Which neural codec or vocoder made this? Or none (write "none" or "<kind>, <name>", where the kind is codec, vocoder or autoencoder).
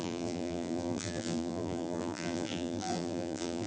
vocoder, BigVGAN v2